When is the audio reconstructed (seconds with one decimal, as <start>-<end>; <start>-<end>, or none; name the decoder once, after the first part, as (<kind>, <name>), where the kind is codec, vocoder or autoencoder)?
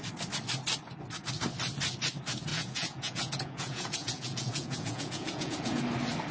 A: 2.5-5.8 (vocoder, Vocos)